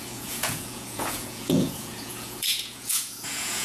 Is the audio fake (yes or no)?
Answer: yes